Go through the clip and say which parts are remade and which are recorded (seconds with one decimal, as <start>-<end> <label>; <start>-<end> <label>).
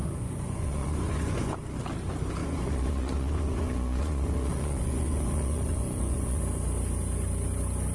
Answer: 0.0-1.5 remade; 1.5-2.4 recorded; 2.4-6.4 remade; 6.4-7.9 recorded